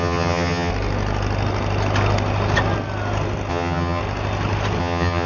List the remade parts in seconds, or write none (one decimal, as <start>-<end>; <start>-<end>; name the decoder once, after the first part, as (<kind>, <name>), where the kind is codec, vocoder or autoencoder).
0.0-0.7 (vocoder, HiFi-GAN); 3.5-4.0; 4.8-5.3